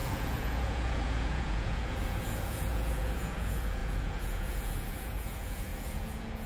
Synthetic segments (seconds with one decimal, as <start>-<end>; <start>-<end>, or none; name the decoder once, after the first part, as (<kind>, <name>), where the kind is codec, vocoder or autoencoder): 0.0-6.5 (vocoder, Vocos)